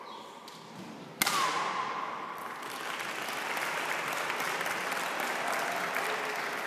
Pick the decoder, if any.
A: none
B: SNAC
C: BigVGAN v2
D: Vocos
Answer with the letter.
A